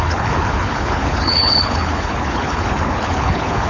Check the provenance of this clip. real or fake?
fake